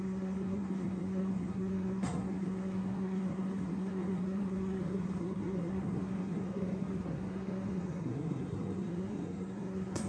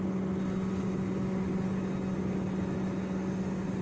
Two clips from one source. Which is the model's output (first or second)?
first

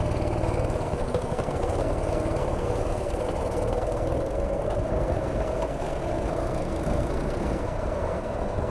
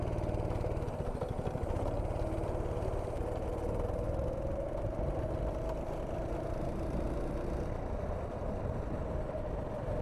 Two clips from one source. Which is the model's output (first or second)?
first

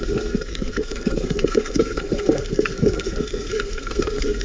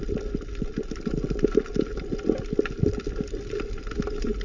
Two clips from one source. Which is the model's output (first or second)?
first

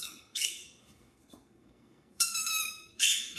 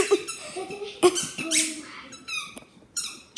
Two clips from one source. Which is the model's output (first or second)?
first